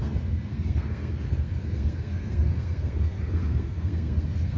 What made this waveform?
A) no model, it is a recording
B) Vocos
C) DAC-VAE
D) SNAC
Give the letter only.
D